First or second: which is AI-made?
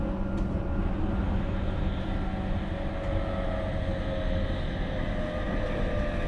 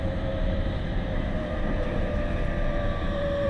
second